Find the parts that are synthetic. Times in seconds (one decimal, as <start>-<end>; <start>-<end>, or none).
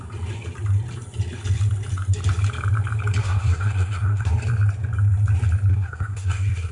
3.2-4.3; 5.7-6.7